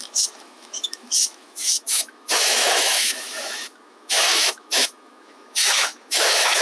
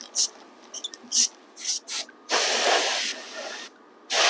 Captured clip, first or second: second